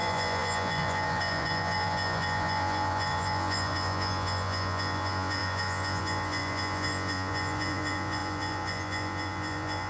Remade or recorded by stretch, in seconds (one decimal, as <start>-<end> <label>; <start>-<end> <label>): 0.0-9.9 remade